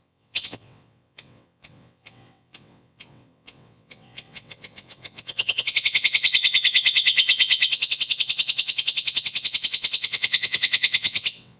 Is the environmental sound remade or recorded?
remade